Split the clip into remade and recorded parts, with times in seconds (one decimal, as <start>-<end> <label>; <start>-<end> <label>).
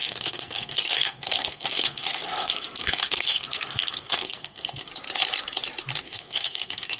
0.0-4.9 remade; 4.9-6.0 recorded; 6.0-7.0 remade